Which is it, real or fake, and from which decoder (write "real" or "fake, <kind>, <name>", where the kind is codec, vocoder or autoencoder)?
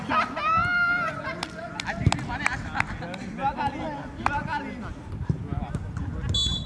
real